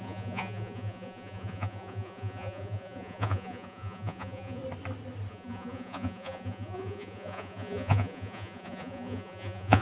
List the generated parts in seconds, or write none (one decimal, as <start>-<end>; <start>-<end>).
0.0-4.6; 5.3-9.8